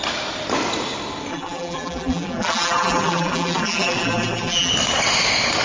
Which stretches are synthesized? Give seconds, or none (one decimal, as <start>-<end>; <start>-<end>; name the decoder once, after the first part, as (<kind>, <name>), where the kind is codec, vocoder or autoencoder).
1.3-4.7 (vocoder, BigVGAN v2)